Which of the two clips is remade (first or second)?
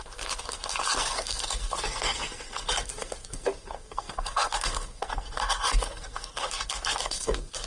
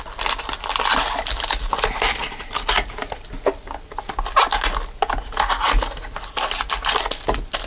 first